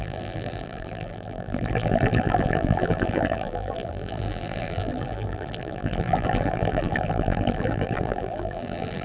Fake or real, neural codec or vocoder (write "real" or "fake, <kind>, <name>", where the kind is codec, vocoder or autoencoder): fake, vocoder, BigVGAN v2